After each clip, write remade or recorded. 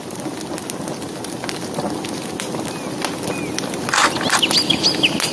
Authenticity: recorded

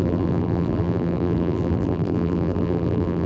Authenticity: remade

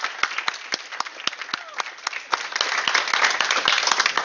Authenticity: recorded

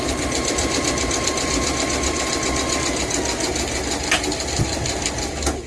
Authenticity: recorded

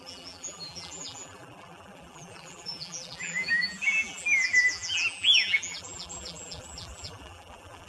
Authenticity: remade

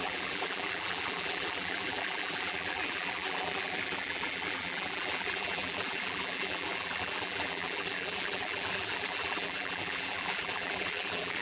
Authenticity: remade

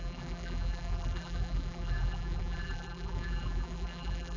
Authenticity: remade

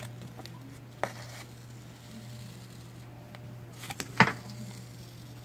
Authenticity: recorded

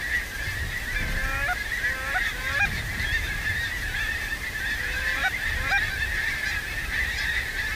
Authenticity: remade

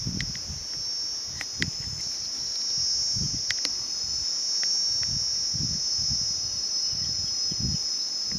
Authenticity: recorded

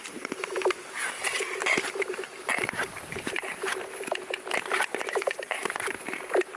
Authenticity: remade